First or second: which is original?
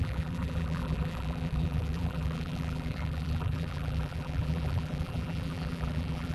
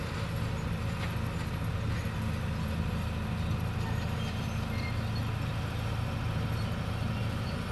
second